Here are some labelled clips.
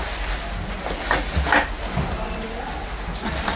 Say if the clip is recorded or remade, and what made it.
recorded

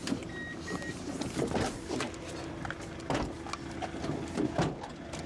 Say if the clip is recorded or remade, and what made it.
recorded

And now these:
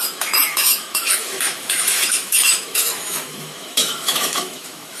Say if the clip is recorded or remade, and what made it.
remade, autoencoder, DAC-VAE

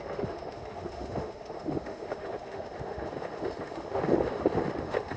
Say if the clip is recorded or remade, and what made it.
remade, autoencoder, DAC-VAE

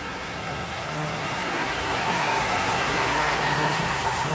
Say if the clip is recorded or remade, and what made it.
remade, codec, SNAC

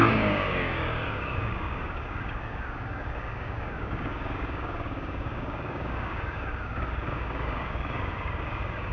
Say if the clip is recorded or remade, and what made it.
remade, codec, DAC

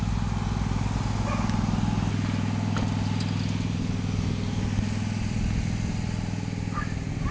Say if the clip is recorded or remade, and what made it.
recorded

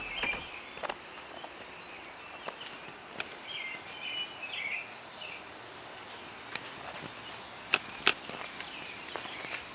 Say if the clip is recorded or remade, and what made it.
recorded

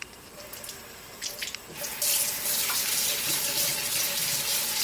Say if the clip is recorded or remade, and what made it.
recorded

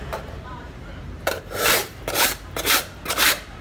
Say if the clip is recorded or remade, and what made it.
remade, vocoder, BigVGAN v2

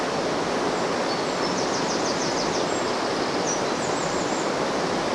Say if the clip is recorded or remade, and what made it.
recorded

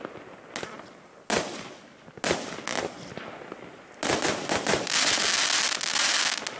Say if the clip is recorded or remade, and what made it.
recorded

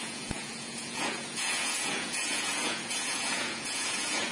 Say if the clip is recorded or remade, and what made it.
remade, vocoder, Vocos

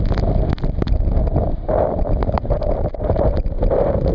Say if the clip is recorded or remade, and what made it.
recorded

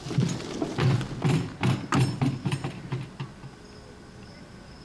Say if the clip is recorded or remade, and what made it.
recorded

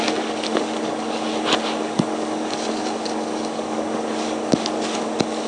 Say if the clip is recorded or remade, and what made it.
remade, codec, DAC